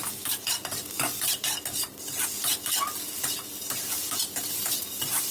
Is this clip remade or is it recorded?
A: recorded